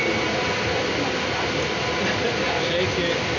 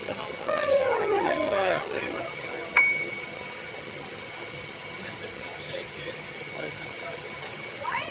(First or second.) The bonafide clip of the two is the first